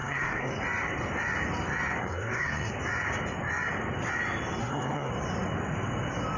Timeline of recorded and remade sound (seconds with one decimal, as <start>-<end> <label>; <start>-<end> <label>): 0.0-0.5 remade; 0.5-2.0 recorded; 2.0-2.7 remade; 2.7-4.6 recorded; 4.6-5.1 remade; 5.1-6.4 recorded